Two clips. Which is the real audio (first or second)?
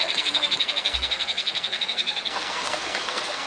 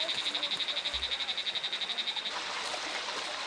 second